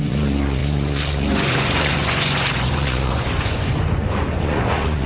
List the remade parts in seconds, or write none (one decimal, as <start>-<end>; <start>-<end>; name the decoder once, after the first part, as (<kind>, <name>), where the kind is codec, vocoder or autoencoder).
0.0-5.1 (vocoder, Vocos)

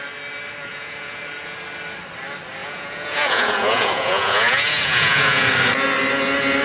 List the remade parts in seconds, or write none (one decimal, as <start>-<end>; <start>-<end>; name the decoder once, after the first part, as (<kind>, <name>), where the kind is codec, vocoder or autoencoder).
0.6-1.2 (vocoder, Vocos); 2.6-5.5

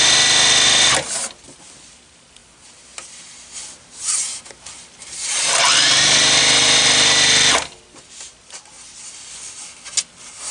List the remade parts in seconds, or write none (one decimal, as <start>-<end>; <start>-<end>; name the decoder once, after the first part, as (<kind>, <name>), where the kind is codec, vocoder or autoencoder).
none

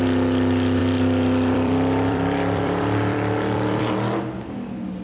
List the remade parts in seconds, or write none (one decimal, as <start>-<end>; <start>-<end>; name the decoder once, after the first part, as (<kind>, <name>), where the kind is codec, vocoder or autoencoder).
0.8-3.8 (vocoder, BigVGAN v2)